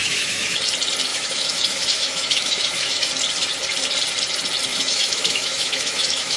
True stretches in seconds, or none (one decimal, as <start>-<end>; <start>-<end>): 0.6-1.1; 3.1-4.7